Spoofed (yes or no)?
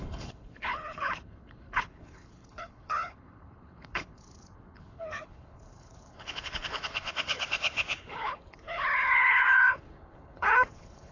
yes